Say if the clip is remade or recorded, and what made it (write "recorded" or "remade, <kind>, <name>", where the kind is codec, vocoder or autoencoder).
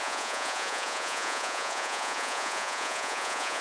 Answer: remade, vocoder, Vocos